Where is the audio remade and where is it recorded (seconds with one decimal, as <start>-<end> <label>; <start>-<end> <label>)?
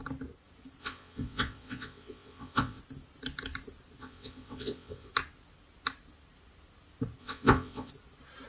0.0-0.8 recorded; 0.8-2.8 remade; 2.8-4.0 recorded; 4.0-5.1 remade; 5.1-7.2 recorded; 7.2-7.9 remade; 7.9-8.5 recorded